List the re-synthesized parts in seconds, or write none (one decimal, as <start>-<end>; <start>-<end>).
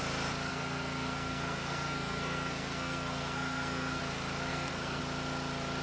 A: 0.5-4.0; 4.5-5.0